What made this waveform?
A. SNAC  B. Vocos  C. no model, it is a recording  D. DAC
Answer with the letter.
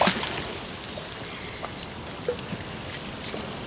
C